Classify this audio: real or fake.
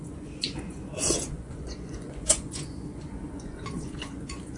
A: fake